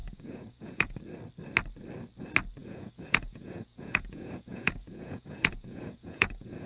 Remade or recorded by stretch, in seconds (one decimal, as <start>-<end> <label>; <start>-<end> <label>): 0.0-1.0 remade; 1.0-2.6 recorded; 2.6-6.7 remade